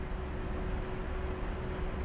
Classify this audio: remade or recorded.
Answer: recorded